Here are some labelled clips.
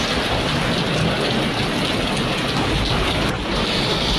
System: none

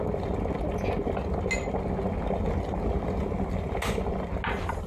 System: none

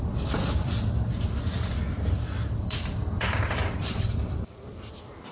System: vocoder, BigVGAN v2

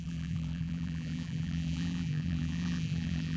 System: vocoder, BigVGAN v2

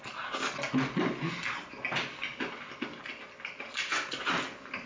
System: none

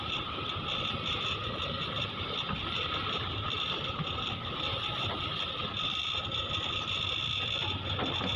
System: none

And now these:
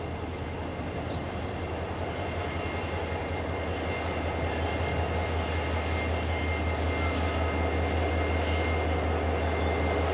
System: none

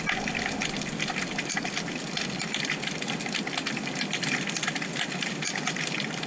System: none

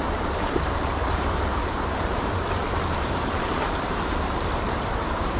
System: vocoder, BigVGAN v2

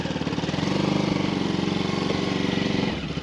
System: none